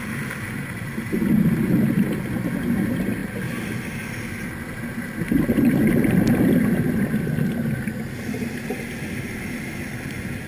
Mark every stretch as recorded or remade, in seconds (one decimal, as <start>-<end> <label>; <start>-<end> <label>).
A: 0.0-10.5 recorded